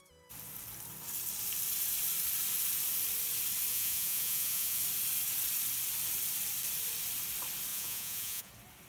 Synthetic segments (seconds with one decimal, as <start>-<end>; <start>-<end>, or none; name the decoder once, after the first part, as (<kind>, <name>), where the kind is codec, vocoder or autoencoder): 3.7-4.8 (vocoder, Vocos); 7.7-8.5